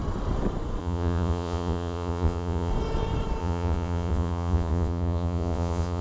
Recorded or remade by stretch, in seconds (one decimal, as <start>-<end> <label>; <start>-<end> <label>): 0.0-0.8 recorded; 0.8-2.7 remade; 2.7-3.4 recorded; 3.4-6.0 remade

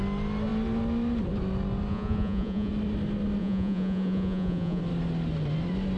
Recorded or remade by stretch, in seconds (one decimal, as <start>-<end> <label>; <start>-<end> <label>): 0.0-1.9 recorded; 1.9-2.7 remade; 2.7-3.4 recorded; 3.4-4.8 remade; 4.8-6.0 recorded

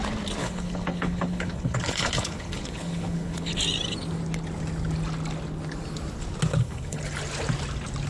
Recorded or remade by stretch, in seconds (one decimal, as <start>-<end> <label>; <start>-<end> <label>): 0.0-0.4 recorded; 0.4-3.6 remade; 3.6-6.5 recorded; 6.5-7.0 remade; 7.0-8.1 recorded

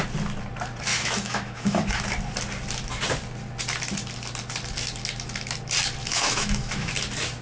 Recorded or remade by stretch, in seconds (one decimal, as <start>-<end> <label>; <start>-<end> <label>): 0.0-0.9 recorded; 0.9-2.0 remade; 2.0-6.0 recorded; 6.0-6.9 remade; 6.9-7.4 recorded

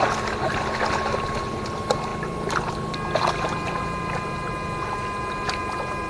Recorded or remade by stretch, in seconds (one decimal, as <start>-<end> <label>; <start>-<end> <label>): 0.0-6.1 recorded